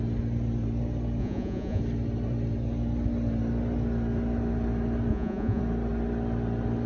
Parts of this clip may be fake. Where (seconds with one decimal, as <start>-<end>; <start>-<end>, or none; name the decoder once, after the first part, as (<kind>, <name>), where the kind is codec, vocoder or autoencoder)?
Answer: 1.2-1.8 (vocoder, Vocos); 5.1-5.6